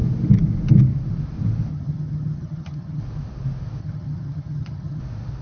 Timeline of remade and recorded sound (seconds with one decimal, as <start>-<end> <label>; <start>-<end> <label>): 0.0-1.7 recorded; 1.7-3.0 remade; 3.0-3.8 recorded; 3.8-5.0 remade; 5.0-5.4 recorded